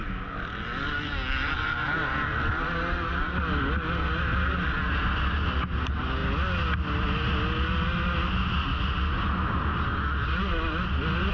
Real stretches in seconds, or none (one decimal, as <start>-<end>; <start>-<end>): 0.0-11.3